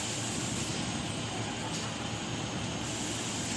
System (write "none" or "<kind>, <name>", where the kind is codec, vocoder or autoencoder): none